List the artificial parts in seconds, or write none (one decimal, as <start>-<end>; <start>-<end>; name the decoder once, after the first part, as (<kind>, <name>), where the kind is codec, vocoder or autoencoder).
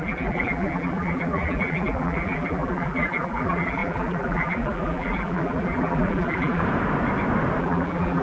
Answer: 0.0-6.6 (vocoder, BigVGAN v2); 7.6-8.2